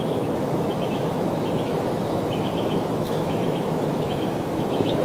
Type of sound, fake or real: fake